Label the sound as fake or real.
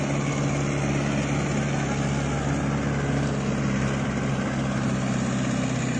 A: real